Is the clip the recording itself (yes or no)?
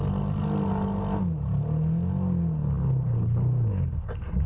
yes